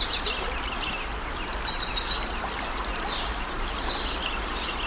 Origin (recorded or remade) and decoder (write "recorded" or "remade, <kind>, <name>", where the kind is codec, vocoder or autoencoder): recorded